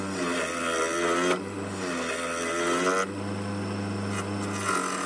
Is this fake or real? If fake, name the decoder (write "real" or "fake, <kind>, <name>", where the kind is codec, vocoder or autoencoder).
real